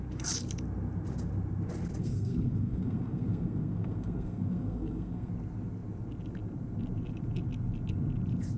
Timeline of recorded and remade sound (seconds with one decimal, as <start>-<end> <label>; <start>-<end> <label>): 0.0-2.0 recorded; 2.0-5.3 remade; 5.3-8.6 recorded